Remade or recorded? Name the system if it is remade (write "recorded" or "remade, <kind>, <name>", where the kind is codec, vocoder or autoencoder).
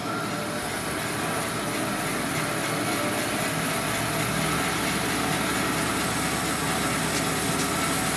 recorded